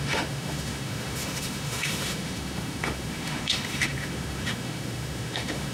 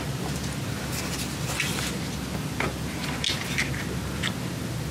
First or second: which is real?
second